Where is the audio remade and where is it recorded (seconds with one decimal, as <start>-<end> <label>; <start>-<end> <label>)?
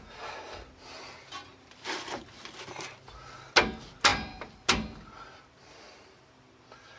0.0-1.5 recorded; 1.5-2.4 remade; 2.4-7.0 recorded